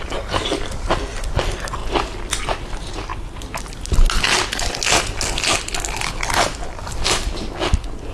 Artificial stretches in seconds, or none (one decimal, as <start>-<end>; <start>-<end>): none